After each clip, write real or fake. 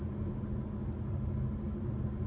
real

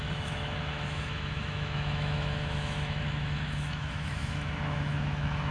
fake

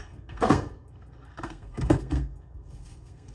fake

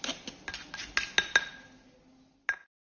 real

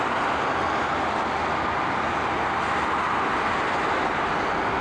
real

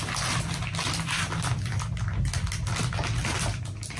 real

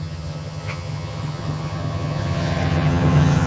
fake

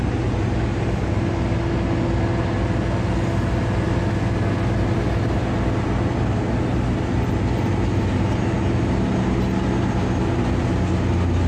real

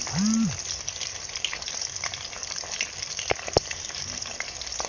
real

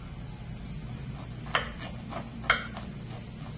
real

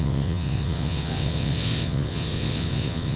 fake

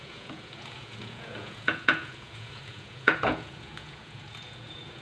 fake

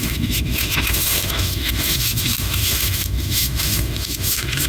fake